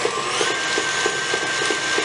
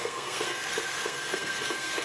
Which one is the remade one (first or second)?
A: second